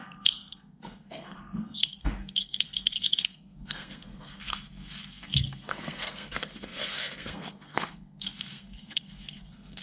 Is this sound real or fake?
fake